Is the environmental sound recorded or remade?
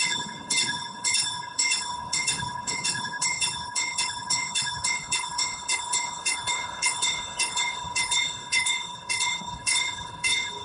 remade